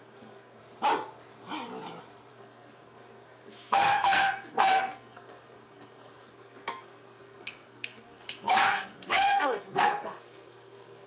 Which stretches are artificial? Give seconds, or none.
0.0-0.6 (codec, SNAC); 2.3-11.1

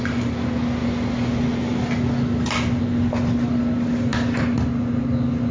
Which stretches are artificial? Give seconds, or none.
none

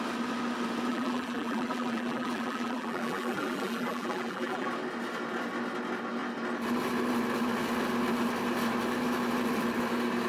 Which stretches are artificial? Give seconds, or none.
0.9-4.7 (vocoder, BigVGAN v2)

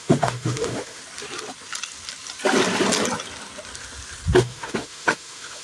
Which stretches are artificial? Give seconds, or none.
0.0-1.0 (autoencoder, DAC-VAE); 4.4-5.6

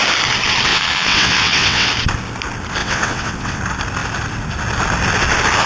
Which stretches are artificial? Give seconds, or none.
0.7-1.9 (vocoder, WaveNeXt); 2.8-3.6

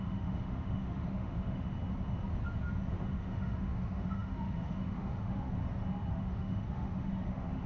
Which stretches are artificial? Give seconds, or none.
0.0-1.7 (autoencoder, DAC-VAE); 3.0-5.6; 6.1-7.7